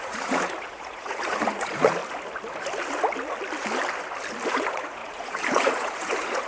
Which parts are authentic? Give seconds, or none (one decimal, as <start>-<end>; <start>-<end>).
2.0-4.5